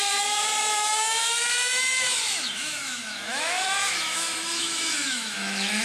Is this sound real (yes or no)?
no